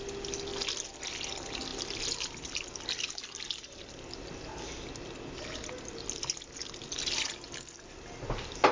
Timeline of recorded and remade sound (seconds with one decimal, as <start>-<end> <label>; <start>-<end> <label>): 0.0-8.7 recorded